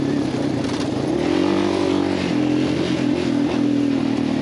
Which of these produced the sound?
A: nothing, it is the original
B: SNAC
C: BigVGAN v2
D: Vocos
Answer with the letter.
A